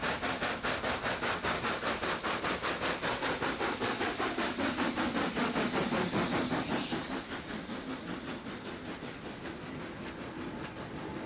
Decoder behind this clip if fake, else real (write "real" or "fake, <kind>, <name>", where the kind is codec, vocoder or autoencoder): real